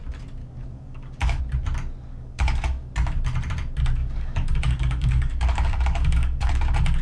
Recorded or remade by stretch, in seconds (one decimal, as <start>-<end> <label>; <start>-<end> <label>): 0.0-0.4 recorded; 0.4-1.4 remade; 1.4-2.1 recorded; 2.1-2.9 remade; 2.9-4.0 recorded; 4.0-6.6 remade; 6.6-7.0 recorded